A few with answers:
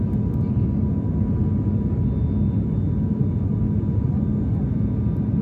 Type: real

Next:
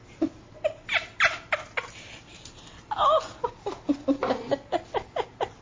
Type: real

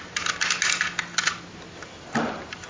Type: real